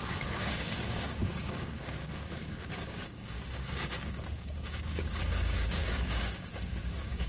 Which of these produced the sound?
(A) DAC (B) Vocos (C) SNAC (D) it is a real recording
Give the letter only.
A